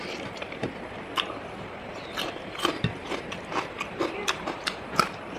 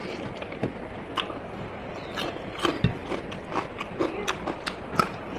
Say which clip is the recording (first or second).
second